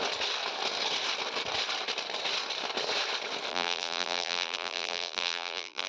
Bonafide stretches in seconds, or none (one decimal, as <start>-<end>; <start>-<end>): 0.0-3.5